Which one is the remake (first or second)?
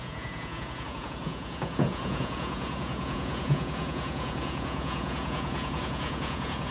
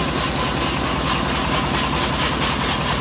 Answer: first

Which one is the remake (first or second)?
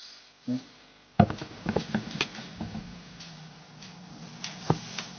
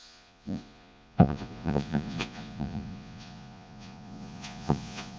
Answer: second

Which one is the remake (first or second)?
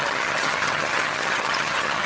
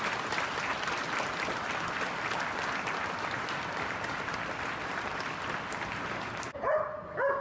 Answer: first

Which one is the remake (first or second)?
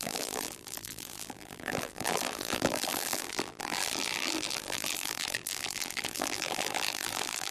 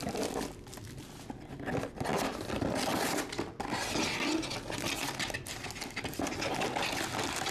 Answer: first